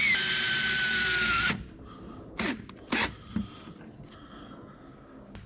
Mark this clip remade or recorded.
recorded